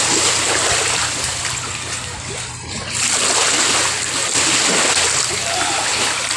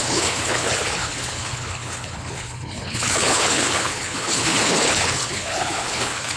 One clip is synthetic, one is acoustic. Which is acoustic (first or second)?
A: first